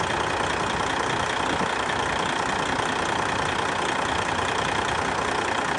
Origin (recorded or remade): recorded